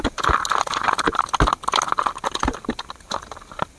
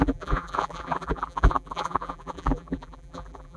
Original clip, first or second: first